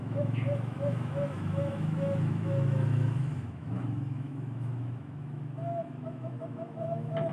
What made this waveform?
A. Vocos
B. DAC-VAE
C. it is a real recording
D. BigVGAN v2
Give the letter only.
B